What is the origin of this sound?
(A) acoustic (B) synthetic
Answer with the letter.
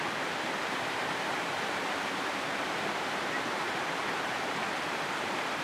B